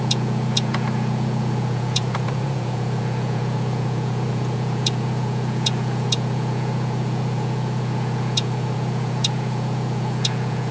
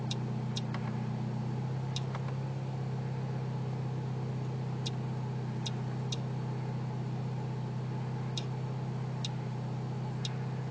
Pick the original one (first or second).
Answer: second